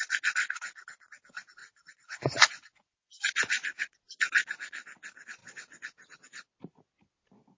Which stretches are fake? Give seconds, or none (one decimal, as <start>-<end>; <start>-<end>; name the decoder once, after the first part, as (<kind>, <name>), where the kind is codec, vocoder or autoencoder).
1.6-3.2 (vocoder, Vocos)